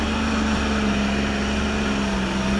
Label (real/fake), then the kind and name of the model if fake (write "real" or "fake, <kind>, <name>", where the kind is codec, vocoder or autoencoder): real